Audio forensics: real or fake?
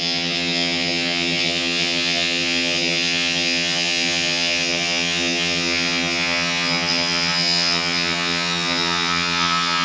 fake